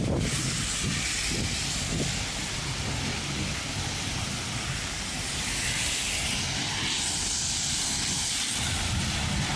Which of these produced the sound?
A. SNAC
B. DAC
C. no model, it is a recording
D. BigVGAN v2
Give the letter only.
C